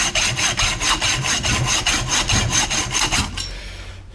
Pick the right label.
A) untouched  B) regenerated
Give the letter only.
A